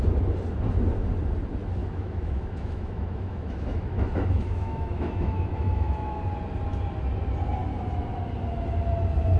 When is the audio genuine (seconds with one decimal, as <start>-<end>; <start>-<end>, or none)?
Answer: 0.0-1.8; 6.2-9.4